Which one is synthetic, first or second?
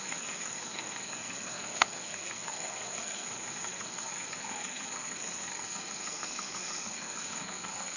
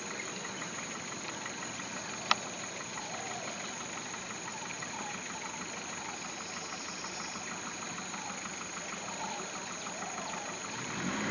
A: first